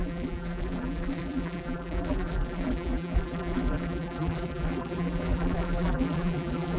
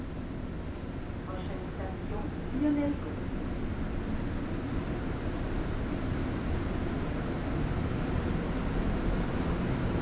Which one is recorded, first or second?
second